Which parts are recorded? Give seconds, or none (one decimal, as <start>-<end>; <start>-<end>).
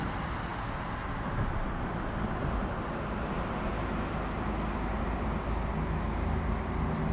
0.0-7.1